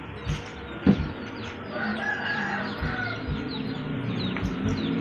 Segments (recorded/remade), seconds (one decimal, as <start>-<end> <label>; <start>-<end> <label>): 0.0-0.5 recorded; 0.5-1.4 remade; 1.4-5.0 recorded